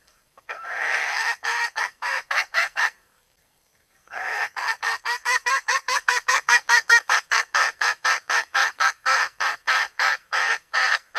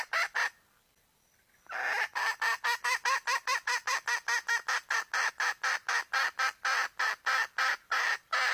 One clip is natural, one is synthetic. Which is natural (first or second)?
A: second